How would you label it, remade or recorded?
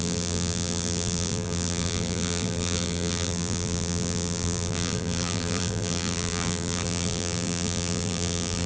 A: remade